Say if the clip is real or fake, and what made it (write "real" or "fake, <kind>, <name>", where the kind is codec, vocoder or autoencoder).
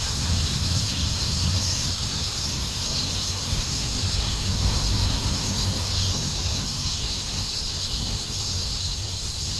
fake, codec, SNAC